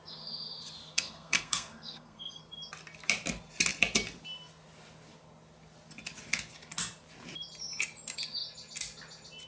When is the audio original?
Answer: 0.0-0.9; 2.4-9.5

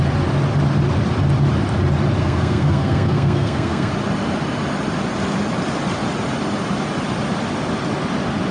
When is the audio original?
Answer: 0.0-2.2; 3.9-8.5

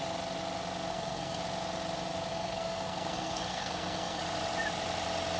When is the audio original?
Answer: 0.0-0.9; 1.4-2.3; 4.2-5.4

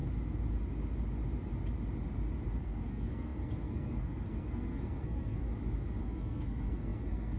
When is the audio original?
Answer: 0.0-2.6; 5.5-6.0

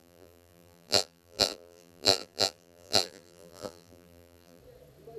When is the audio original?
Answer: 4.6-5.2

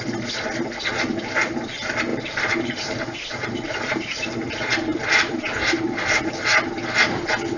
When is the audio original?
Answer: 0.0-2.1; 4.5-4.9; 6.2-7.6